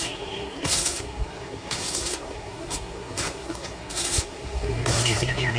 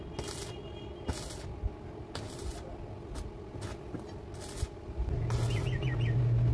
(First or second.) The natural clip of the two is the second